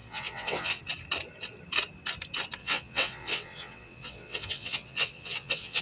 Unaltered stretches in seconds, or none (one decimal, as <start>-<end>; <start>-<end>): 0.8-2.6